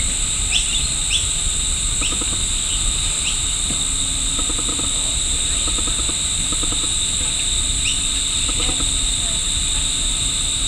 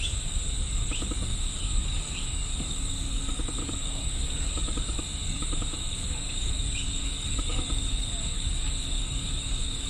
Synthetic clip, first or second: second